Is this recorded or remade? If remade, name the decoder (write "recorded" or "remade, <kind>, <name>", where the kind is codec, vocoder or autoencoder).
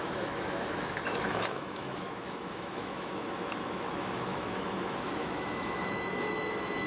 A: remade, autoencoder, DAC-VAE